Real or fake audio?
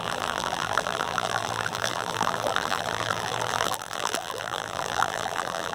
fake